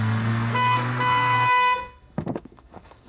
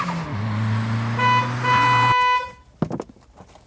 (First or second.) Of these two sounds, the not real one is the first